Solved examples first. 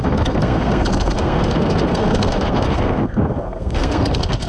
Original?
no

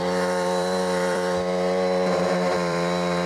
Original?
no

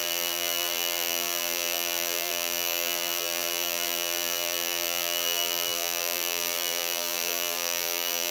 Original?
no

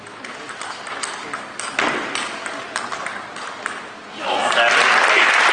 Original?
yes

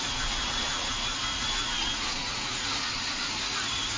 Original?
no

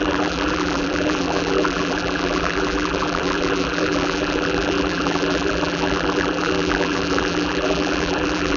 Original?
no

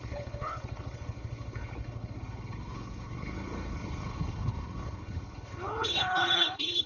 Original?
no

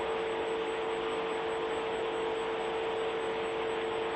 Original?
yes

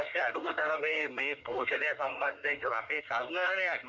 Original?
no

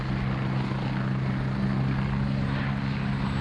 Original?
yes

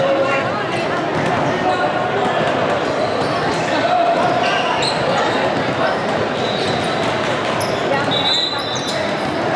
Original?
yes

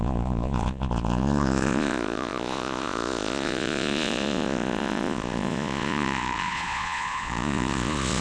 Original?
no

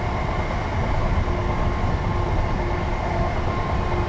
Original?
yes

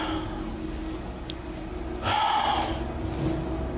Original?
yes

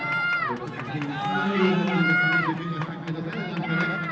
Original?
yes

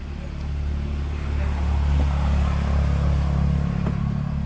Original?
yes